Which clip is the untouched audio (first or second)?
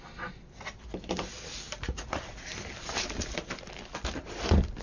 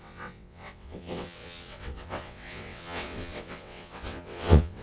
first